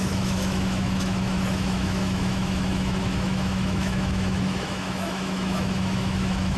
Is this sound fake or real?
fake